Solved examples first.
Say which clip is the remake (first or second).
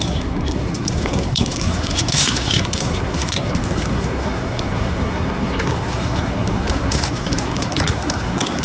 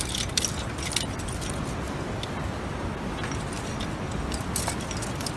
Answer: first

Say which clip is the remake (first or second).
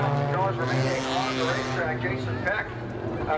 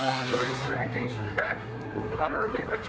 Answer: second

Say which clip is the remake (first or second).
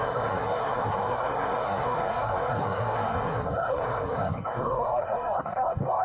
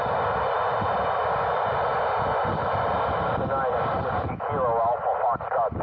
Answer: first